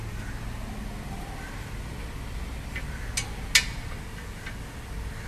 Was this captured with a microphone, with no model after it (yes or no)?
yes